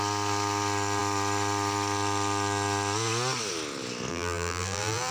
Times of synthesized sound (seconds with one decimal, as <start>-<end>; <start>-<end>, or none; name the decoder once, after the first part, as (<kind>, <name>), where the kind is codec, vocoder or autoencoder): 4.1-5.1 (vocoder, BigVGAN v2)